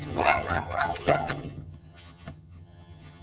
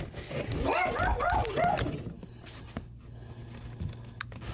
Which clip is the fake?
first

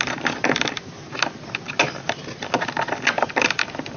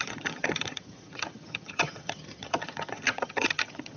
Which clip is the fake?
second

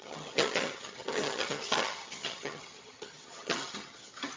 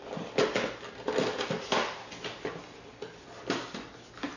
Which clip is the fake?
first